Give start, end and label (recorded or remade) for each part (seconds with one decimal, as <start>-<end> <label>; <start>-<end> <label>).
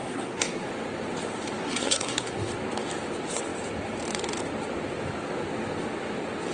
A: 0.0-0.7 remade; 0.7-1.6 recorded; 1.6-2.5 remade; 2.5-6.5 recorded